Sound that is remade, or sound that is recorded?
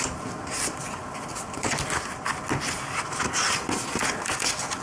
recorded